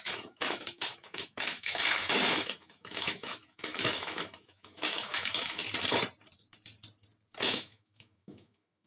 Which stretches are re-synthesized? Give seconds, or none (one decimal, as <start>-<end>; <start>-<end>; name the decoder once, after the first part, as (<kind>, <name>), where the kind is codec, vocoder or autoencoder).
0.0-5.6 (autoencoder, DAC-VAE); 7.4-8.9